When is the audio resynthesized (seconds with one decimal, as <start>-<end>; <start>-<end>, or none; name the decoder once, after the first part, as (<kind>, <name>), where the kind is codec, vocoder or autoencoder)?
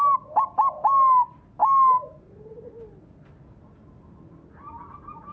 none